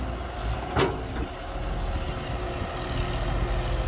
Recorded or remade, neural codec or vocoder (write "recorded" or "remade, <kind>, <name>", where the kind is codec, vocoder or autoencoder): recorded